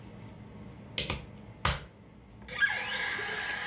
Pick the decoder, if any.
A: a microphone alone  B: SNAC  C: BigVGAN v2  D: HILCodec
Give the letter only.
A